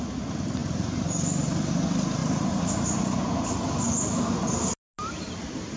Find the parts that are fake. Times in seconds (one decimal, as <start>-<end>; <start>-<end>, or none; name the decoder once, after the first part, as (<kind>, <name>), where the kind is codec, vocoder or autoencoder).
2.2-2.7 (vocoder, BigVGAN v2)